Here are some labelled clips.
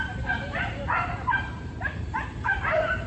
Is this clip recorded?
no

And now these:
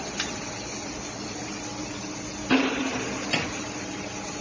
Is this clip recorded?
yes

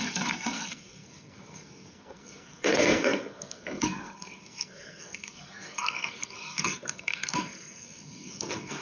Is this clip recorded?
no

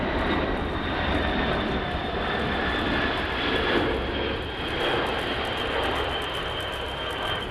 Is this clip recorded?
yes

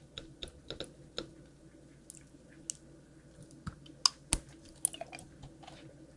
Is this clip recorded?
yes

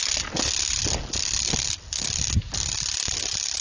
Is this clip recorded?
yes